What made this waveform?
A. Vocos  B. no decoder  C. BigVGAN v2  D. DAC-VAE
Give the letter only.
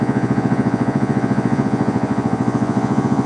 A